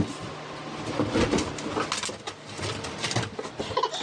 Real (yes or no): yes